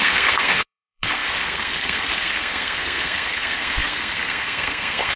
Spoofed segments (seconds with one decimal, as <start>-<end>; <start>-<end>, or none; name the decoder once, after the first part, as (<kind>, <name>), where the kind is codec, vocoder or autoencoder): 0.0-5.2 (codec, SNAC)